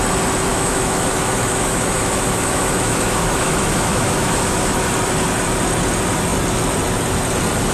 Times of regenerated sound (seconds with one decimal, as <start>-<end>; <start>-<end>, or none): 0.5-4.9